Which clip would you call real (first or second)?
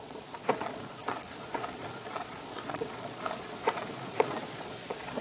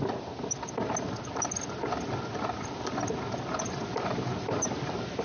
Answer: second